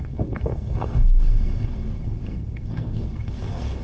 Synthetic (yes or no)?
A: yes